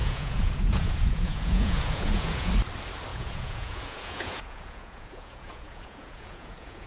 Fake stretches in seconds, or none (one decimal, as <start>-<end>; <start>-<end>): 0.0-2.5; 3.1-6.9